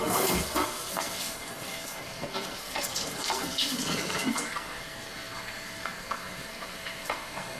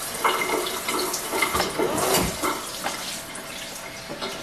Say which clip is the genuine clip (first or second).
second